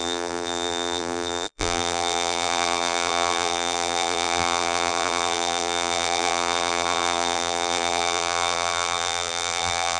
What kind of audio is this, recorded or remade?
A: remade